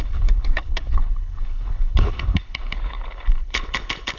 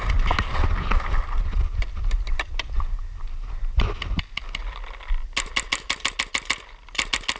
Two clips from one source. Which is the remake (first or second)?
first